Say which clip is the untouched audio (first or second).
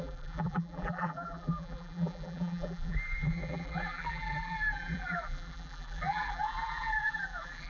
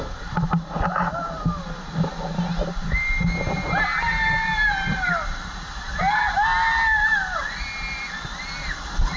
second